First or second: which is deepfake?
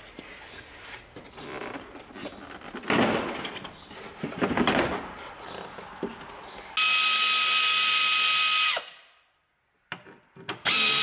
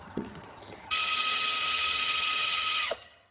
second